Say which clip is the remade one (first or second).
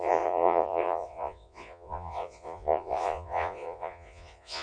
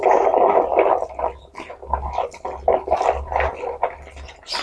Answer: first